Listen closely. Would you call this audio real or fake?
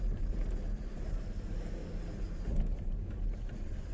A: real